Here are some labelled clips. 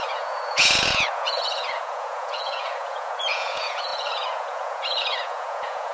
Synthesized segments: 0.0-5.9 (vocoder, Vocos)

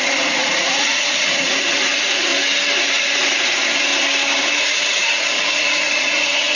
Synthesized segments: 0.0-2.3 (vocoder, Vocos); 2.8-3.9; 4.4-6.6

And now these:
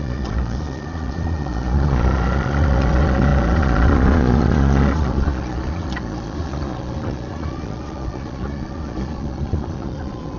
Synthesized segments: 0.0-10.4 (vocoder, Vocos)

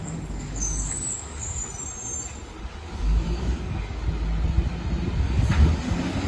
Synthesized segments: 0.0-1.6 (codec, DAC); 2.6-4.0; 5.2-6.3

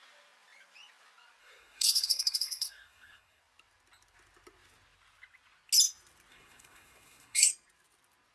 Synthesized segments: 1.4-3.4 (codec, SNAC); 6.3-7.5

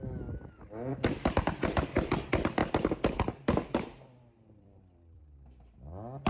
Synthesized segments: 2.6-5.2 (vocoder, BigVGAN v2)